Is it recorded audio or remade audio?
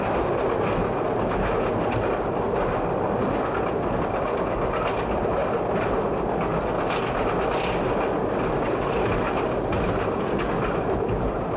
recorded